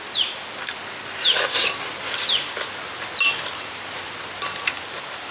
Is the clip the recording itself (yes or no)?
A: yes